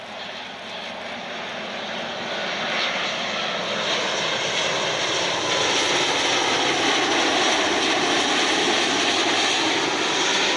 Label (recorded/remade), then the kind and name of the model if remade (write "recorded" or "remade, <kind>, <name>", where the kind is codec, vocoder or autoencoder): recorded